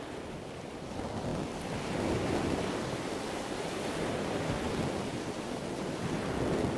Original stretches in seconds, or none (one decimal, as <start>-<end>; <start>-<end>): 0.0-6.8